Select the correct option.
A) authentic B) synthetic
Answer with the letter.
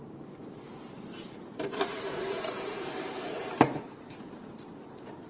B